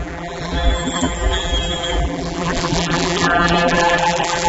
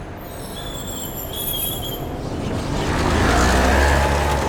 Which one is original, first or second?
second